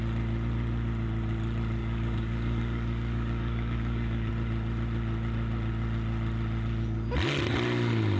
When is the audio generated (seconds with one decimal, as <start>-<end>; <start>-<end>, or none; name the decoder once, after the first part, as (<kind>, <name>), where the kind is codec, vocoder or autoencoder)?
1.8-4.3 (codec, DAC)